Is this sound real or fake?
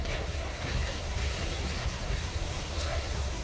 fake